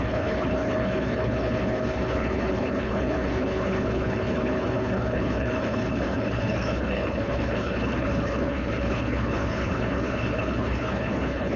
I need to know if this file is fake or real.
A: fake